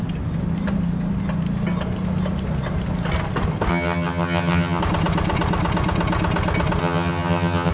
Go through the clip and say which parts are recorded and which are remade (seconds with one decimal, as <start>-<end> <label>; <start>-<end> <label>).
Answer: 0.0-3.7 recorded; 3.7-4.8 remade; 4.8-6.8 recorded; 6.8-7.7 remade